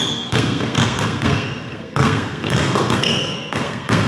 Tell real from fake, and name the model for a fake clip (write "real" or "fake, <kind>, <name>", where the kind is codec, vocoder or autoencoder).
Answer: fake, codec, SNAC